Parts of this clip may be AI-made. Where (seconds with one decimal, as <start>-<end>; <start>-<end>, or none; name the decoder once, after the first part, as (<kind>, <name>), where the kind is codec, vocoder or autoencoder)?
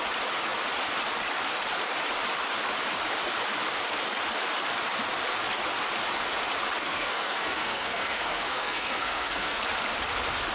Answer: 6.8-9.6 (codec, SNAC)